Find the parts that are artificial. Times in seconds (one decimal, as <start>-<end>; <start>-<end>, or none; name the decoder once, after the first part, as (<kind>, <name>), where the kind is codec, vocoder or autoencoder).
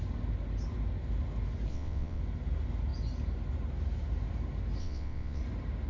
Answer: 1.7-2.2 (vocoder, WaveNeXt); 4.8-5.4